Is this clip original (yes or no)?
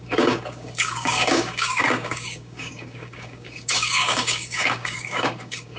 no